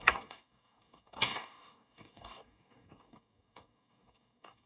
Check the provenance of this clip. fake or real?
fake